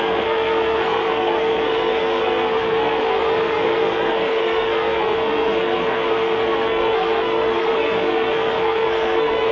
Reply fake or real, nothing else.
fake